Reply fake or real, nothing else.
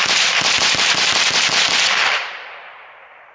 fake